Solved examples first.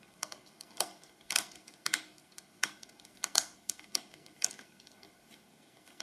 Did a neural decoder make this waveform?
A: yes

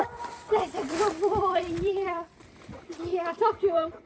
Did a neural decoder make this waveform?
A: yes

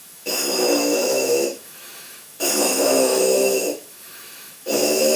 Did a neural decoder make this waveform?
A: yes